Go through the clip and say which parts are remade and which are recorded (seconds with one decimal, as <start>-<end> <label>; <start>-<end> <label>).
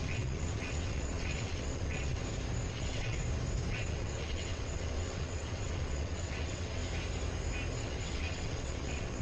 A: 0.0-2.2 remade; 2.2-2.7 recorded; 2.7-3.2 remade; 3.2-3.7 recorded; 3.7-6.8 remade; 6.8-7.8 recorded; 7.8-9.2 remade